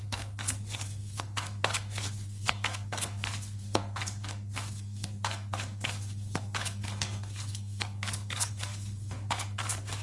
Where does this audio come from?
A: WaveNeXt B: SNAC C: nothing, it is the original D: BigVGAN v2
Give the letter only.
B